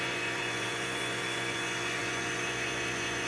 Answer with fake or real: fake